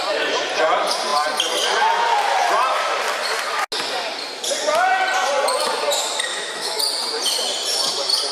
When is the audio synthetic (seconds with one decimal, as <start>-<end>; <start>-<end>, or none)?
6.3-6.8